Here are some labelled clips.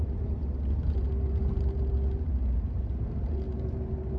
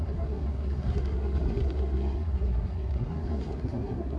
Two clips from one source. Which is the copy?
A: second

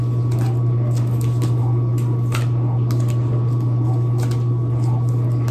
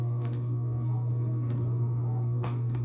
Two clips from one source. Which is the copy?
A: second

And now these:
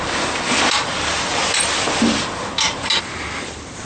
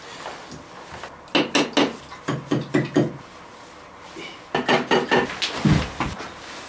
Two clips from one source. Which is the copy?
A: first